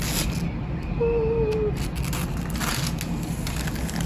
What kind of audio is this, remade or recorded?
recorded